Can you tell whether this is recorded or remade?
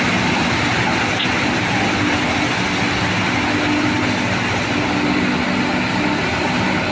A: recorded